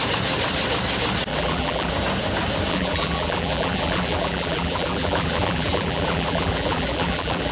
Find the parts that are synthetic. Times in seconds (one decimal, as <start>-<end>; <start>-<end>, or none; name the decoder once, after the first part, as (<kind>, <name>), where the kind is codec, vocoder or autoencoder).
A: 1.3-1.9 (vocoder, BigVGAN v2); 2.7-7.5